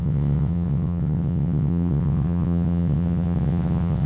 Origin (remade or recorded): remade